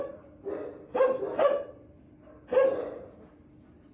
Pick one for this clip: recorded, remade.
recorded